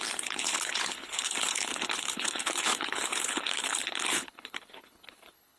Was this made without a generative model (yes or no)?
no